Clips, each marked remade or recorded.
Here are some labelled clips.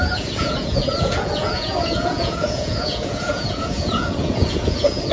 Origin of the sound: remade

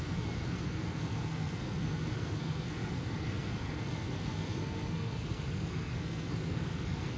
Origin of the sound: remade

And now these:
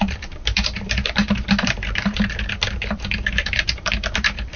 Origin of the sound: remade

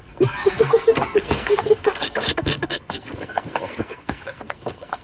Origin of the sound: remade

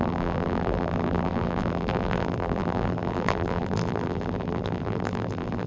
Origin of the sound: remade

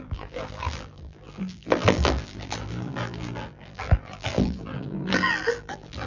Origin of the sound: remade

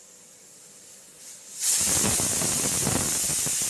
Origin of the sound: recorded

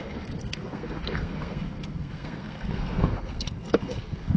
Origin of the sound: remade